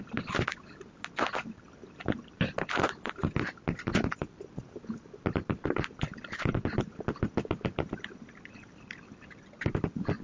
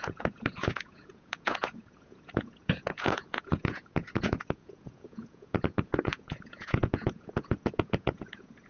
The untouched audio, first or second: first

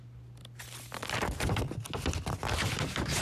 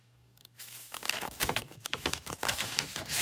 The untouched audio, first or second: first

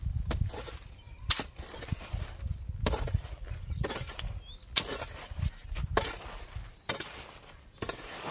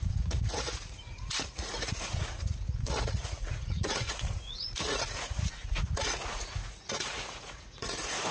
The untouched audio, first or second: first